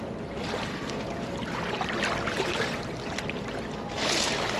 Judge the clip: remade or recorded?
recorded